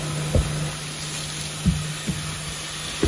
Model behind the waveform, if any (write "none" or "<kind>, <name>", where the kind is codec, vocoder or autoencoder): none